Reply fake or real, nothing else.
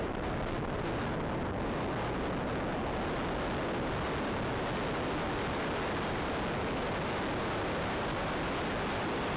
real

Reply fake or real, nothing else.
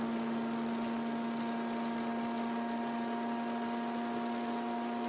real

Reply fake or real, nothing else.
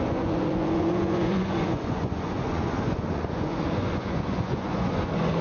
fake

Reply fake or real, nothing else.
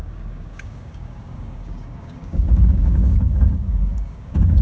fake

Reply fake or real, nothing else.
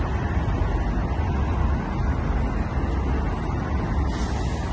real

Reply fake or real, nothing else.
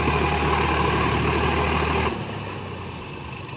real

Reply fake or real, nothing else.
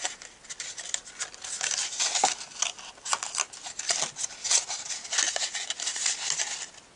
real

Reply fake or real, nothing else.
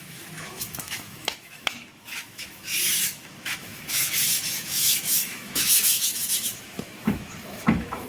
fake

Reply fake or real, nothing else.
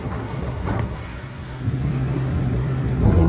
fake